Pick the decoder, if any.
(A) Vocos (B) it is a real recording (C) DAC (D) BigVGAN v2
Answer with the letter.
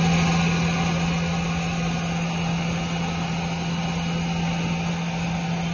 B